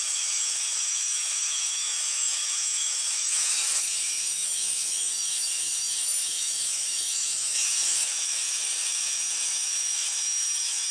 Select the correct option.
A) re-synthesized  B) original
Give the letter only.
A